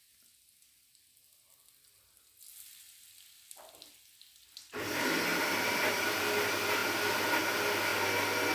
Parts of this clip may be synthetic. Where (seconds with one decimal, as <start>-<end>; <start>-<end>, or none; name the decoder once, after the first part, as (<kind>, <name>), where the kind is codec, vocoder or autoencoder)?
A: 5.3-5.8 (vocoder, BigVGAN v2)